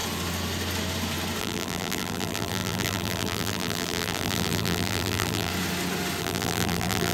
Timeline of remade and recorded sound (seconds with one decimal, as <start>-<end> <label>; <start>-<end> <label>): 0.0-1.4 recorded; 1.4-5.5 remade; 5.5-6.2 recorded; 6.2-7.1 remade